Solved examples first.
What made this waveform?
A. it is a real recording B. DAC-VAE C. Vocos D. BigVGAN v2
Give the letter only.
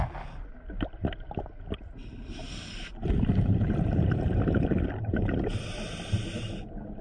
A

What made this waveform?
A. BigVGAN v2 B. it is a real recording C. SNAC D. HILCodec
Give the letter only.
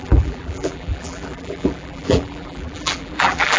A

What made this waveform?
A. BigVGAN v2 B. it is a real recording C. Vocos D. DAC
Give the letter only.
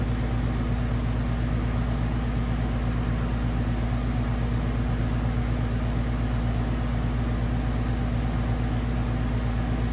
B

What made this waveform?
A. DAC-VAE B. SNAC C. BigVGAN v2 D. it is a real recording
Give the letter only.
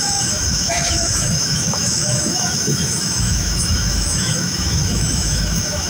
A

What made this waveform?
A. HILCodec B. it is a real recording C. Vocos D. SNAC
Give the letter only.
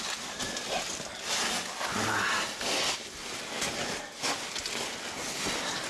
B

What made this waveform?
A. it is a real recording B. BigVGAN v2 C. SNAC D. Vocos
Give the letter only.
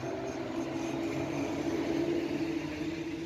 A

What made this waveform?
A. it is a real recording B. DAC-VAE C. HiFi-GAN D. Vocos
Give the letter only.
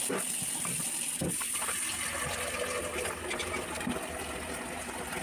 A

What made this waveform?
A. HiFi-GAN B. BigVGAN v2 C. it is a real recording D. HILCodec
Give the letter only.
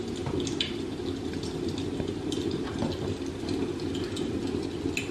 C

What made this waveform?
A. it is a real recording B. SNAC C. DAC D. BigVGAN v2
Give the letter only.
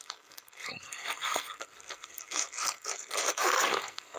B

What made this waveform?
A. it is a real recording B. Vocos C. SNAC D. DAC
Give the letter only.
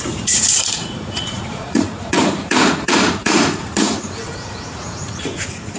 B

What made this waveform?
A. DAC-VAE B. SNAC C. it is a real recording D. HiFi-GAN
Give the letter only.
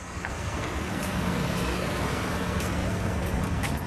B